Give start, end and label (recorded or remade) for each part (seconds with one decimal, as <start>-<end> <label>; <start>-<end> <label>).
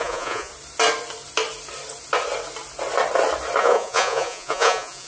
0.0-0.5 remade; 0.5-3.6 recorded; 3.6-5.1 remade